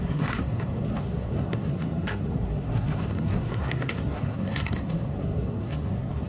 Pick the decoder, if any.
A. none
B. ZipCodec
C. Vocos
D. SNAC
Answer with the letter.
D